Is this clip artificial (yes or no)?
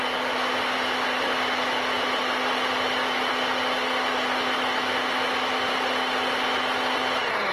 no